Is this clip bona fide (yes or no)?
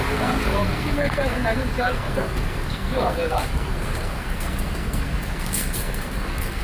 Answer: no